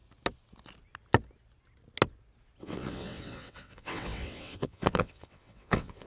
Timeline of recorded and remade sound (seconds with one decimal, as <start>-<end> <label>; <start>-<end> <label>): 0.0-2.6 recorded; 2.6-6.1 remade